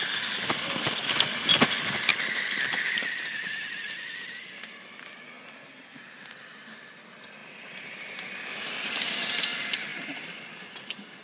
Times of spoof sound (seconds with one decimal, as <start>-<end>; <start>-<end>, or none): none